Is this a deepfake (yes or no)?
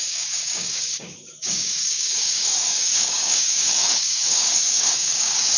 yes